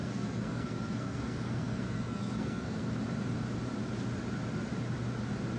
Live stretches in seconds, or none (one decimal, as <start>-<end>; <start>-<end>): 2.9-5.6